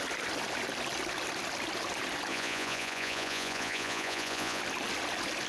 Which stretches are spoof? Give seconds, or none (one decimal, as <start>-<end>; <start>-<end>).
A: 2.3-4.6